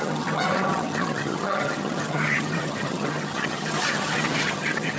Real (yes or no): no